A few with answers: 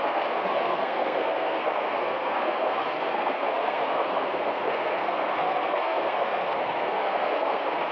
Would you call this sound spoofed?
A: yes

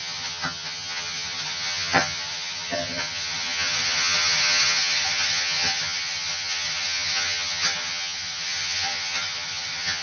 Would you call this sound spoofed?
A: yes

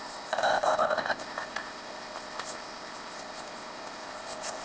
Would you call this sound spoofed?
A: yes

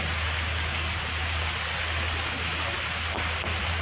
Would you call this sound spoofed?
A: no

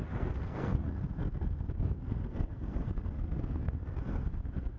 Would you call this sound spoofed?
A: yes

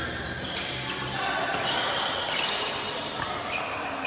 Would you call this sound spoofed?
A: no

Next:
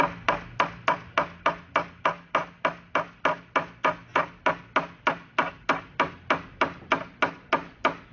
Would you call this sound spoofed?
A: no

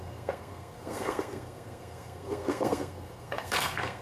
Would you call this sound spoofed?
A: yes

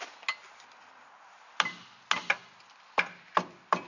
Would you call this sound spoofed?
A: no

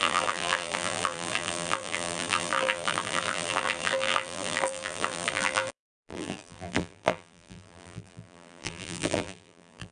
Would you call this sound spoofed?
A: yes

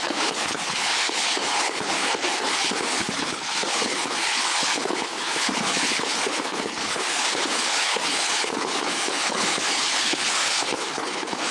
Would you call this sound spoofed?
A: yes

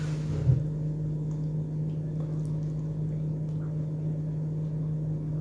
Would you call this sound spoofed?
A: no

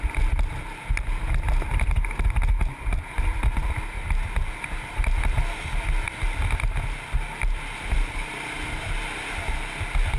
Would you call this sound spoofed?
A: no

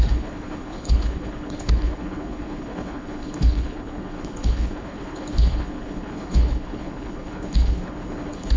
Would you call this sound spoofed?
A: yes